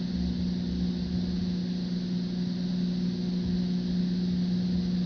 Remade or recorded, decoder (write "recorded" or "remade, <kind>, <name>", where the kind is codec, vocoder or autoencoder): recorded